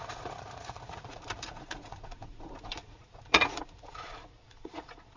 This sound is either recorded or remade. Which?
remade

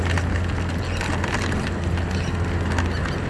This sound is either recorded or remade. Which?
recorded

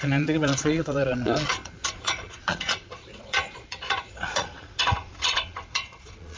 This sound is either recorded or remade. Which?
remade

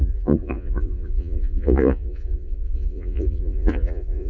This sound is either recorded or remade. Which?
remade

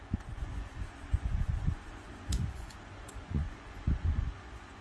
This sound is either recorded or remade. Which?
remade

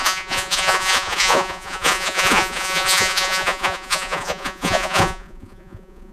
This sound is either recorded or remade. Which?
remade